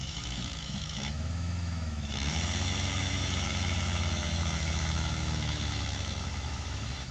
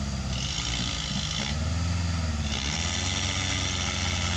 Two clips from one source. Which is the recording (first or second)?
second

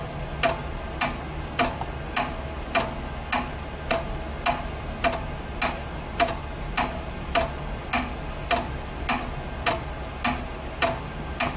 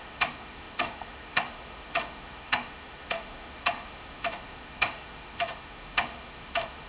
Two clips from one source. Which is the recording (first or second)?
first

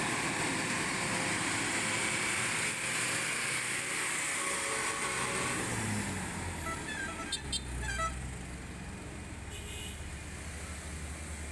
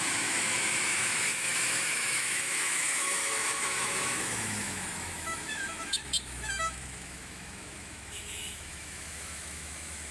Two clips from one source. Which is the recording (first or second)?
first